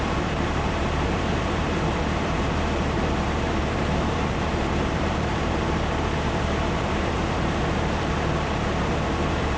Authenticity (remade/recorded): remade